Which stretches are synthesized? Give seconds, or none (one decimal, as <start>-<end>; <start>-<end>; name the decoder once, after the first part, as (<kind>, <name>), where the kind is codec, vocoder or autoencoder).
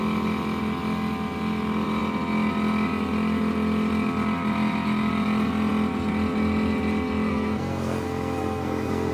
7.3-9.1 (codec, SNAC)